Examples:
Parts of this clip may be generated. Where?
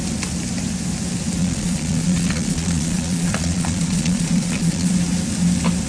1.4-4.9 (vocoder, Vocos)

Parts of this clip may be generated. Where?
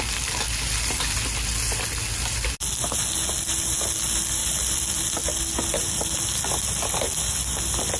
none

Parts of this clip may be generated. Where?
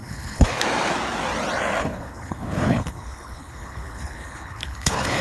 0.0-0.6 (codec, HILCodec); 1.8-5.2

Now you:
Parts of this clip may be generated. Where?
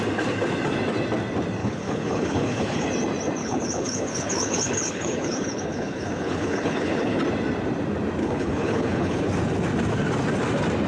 1.6-2.9 (codec, HILCodec); 3.4-7.2; 8.2-9.3